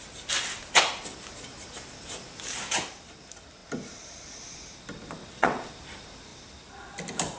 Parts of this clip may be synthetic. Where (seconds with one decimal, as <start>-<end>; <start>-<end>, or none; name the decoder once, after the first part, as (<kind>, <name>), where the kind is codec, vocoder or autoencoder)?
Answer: 5.2-5.7 (vocoder, WaveNeXt)